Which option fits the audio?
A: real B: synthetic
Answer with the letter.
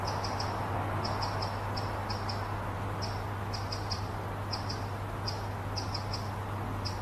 A